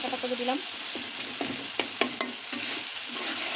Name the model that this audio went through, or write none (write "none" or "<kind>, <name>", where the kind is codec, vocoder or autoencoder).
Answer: none